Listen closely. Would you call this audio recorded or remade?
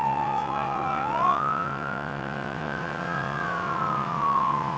remade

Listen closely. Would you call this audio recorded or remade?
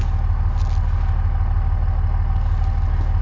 recorded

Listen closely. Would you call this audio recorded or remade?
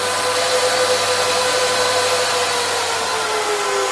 recorded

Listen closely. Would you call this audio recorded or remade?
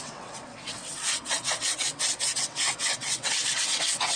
remade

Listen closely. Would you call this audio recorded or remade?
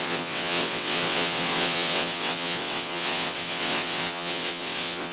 remade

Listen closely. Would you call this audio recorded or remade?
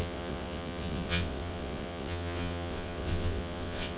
remade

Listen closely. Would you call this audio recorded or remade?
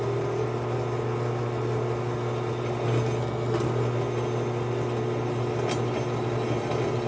recorded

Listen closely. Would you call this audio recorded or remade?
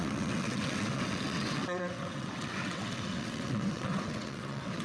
remade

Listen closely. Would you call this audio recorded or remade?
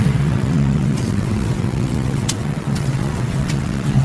remade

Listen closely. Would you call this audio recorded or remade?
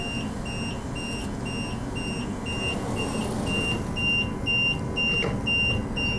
recorded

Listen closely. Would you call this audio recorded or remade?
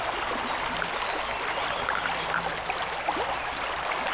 recorded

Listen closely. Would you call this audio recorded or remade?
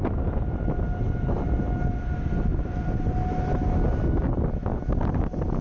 recorded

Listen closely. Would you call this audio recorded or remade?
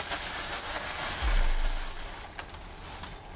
recorded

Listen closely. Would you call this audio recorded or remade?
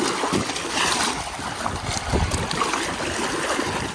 recorded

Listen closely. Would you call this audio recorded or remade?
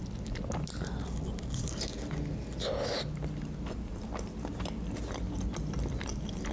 recorded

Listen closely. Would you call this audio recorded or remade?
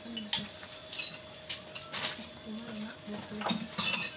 recorded